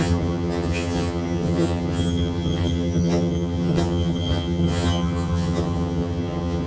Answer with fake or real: fake